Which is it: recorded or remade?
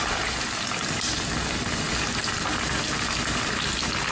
recorded